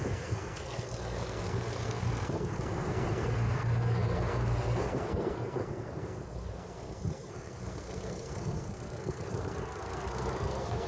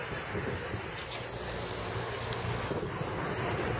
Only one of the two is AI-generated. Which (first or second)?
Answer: first